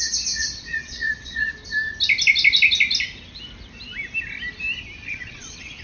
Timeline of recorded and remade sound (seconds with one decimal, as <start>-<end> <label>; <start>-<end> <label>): 0.0-1.6 remade; 1.6-5.1 recorded; 5.1-5.8 remade